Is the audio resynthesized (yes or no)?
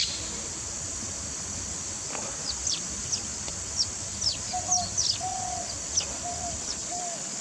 no